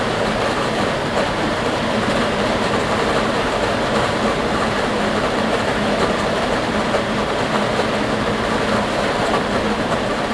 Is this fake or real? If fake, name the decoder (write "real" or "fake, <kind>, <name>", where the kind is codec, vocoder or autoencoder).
fake, vocoder, BigVGAN v2